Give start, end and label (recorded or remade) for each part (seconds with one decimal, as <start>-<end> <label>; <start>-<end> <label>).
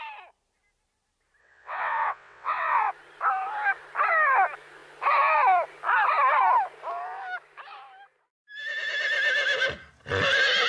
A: 0.0-1.4 recorded; 1.4-2.9 remade; 2.9-10.7 recorded